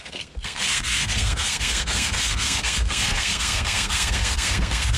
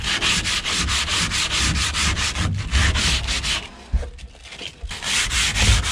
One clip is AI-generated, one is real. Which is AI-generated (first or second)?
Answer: first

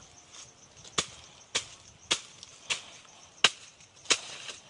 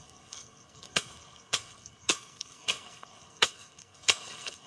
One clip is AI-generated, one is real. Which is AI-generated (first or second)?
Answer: second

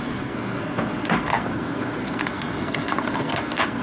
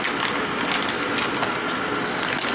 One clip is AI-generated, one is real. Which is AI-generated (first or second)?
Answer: first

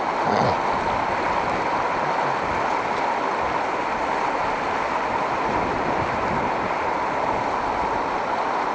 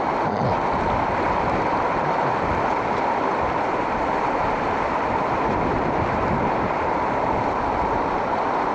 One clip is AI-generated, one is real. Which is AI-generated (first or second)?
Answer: second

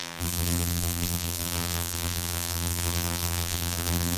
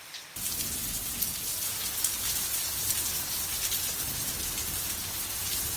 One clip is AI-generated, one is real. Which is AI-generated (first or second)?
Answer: first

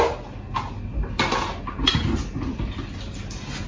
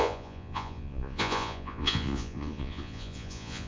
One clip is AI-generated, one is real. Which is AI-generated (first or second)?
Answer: second